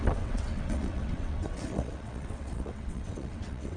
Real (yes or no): no